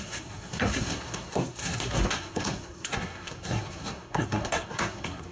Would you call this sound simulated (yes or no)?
yes